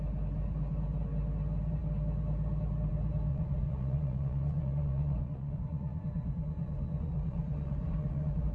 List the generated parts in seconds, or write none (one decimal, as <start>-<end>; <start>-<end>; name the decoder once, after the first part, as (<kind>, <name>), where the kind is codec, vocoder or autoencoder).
3.3-8.5 (vocoder, Vocos)